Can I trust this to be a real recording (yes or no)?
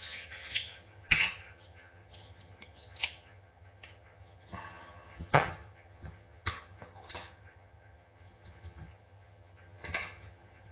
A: no